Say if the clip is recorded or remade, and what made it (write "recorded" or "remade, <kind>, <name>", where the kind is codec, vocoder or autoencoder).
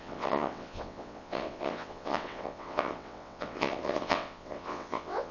remade, vocoder, WaveNeXt